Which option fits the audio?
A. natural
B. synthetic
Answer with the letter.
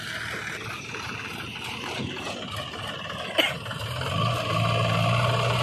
A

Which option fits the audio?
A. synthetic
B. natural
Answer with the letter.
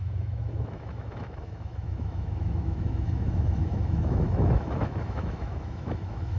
A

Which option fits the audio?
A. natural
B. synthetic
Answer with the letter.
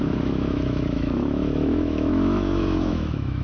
B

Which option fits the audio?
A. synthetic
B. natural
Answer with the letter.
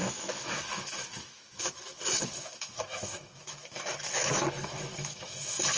A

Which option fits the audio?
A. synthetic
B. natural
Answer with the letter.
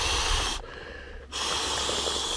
B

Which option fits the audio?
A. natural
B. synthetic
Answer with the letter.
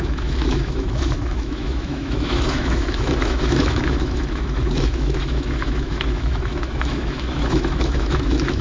B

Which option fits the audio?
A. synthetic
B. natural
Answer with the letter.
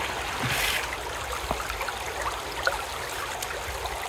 B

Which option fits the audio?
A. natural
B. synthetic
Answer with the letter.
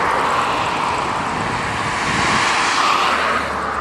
A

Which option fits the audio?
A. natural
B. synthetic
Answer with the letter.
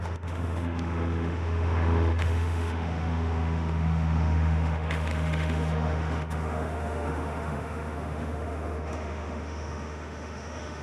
B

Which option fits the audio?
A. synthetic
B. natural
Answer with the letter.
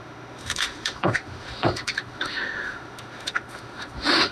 A